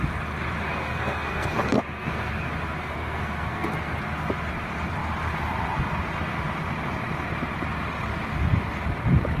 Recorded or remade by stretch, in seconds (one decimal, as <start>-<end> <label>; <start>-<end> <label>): 0.0-0.6 recorded; 0.6-2.3 remade; 2.3-2.8 recorded; 2.8-4.0 remade; 4.0-9.4 recorded